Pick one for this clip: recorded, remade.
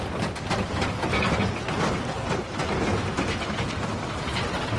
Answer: recorded